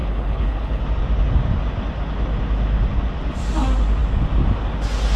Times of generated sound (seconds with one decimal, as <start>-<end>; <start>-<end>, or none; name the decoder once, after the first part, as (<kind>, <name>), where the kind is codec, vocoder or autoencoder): 0.0-0.8 (codec, HILCodec)